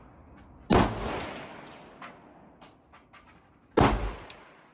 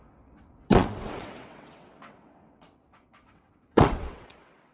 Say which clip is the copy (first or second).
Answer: second